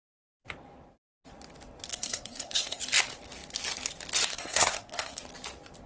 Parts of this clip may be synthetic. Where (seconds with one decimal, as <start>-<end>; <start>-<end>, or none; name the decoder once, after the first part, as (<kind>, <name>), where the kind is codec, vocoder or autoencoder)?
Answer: 1.9-2.8 (codec, SNAC); 4.3-5.2

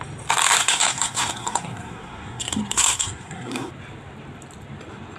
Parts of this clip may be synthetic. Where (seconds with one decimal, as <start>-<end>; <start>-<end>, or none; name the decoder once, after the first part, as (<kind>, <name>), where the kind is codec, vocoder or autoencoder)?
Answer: 0.6-3.7 (codec, SNAC)